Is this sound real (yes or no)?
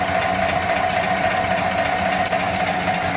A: yes